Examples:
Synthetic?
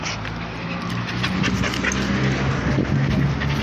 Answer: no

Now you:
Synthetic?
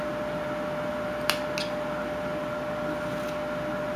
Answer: no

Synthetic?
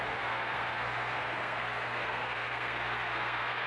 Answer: yes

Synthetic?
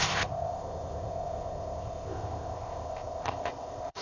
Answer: yes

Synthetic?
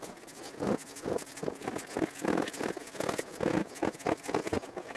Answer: no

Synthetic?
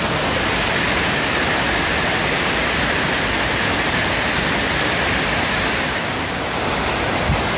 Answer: no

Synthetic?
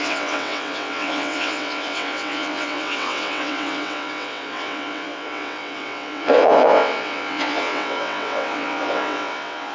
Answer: yes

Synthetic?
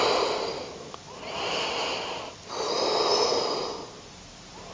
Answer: no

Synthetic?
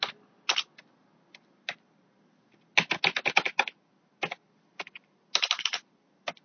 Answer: no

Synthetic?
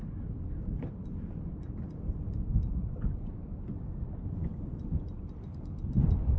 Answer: no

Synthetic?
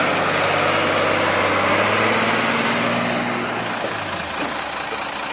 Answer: no